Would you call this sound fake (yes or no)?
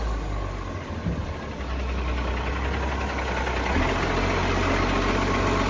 no